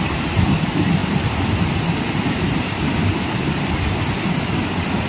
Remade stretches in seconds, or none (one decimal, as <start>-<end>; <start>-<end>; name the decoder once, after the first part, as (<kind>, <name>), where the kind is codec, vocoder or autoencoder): none